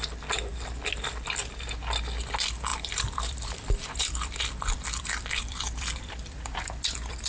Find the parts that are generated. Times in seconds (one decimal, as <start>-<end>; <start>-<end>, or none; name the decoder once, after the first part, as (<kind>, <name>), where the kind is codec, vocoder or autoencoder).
2.7-7.3 (vocoder, BigVGAN v2)